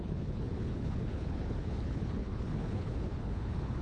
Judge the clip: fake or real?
fake